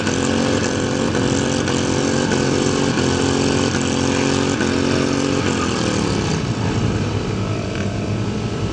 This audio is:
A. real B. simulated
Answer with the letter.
A